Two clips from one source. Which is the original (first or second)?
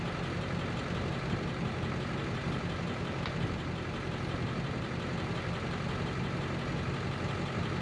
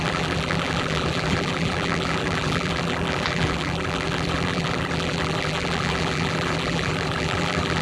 first